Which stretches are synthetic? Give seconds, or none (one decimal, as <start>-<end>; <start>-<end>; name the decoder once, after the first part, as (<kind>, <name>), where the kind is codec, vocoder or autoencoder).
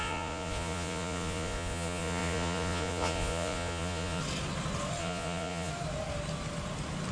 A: 0.0-4.2 (vocoder, Vocos); 5.0-5.7